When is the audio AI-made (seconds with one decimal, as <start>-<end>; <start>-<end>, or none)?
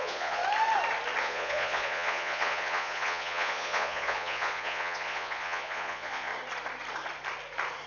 0.0-0.4; 1.2-6.3